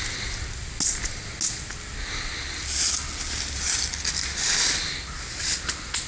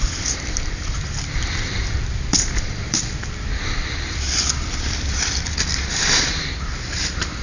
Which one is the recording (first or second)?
first